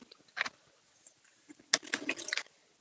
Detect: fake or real real